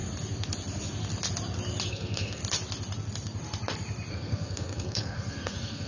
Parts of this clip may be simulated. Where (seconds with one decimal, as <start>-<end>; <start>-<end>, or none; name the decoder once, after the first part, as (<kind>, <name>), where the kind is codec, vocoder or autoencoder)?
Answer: 1.9-2.4 (codec, SNAC); 4.1-5.9